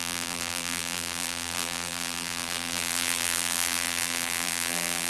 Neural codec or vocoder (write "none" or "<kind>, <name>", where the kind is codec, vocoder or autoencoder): vocoder, BigVGAN v2